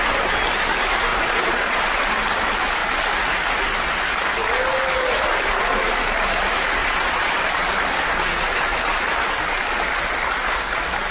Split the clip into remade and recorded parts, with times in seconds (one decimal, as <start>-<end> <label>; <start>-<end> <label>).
0.0-1.1 recorded; 1.1-1.8 remade; 1.8-6.8 recorded; 6.8-7.4 remade; 7.4-11.1 recorded